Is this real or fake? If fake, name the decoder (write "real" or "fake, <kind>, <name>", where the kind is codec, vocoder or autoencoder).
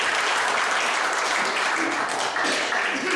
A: real